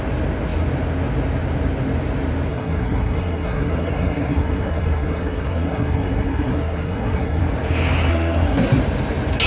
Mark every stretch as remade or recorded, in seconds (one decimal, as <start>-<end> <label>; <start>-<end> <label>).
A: 0.0-2.5 recorded; 2.5-7.4 remade; 7.4-8.1 recorded; 8.1-8.8 remade; 8.8-9.5 recorded